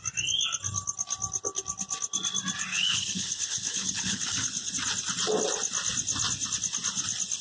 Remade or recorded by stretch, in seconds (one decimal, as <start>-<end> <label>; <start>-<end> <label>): 0.0-2.7 recorded; 2.7-4.7 remade; 4.7-7.4 recorded